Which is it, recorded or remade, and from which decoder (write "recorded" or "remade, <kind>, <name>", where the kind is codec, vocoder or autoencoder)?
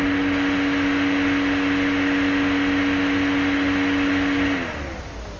recorded